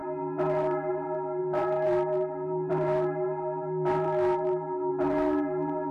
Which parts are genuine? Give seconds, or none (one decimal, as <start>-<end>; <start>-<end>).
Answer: none